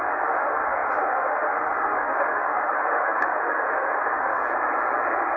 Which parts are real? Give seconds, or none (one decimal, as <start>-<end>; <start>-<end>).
4.4-5.4